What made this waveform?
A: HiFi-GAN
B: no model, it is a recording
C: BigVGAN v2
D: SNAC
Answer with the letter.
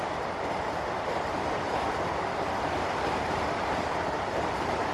C